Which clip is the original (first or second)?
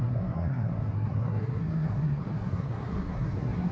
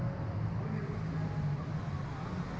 second